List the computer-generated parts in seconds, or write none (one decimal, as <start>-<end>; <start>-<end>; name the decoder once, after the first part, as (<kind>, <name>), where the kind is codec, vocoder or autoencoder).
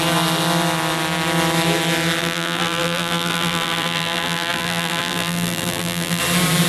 2.2-6.2 (vocoder, BigVGAN v2)